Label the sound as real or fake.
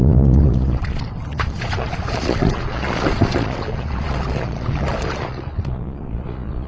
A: fake